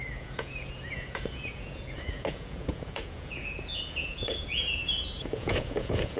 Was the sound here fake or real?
fake